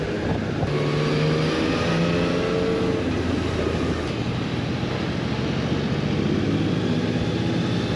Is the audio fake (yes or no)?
no